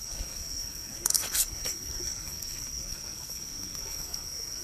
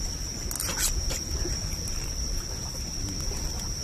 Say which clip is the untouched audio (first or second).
second